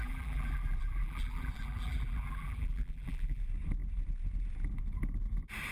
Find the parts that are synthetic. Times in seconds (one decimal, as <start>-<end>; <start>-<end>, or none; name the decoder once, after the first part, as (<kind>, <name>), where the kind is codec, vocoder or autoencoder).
0.0-3.4 (vocoder, BigVGAN v2)